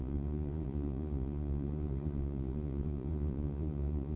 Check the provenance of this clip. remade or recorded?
remade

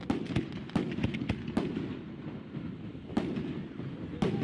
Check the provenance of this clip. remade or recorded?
recorded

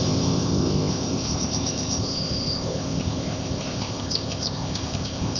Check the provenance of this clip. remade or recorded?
remade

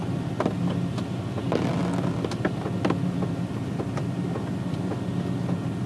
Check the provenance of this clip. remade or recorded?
recorded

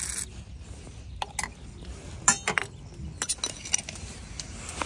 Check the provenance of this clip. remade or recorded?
recorded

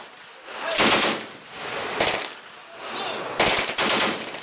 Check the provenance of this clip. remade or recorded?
recorded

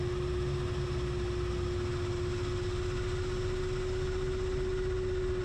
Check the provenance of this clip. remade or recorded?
recorded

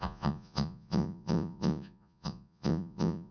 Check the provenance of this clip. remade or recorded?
remade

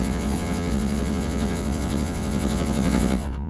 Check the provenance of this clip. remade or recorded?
remade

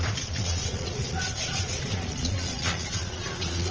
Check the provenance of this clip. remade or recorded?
remade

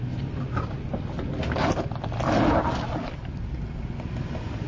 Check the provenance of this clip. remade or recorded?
recorded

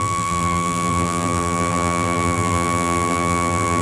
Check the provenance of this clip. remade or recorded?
remade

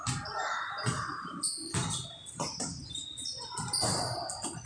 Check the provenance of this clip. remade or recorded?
recorded